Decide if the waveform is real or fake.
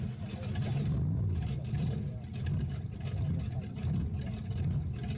real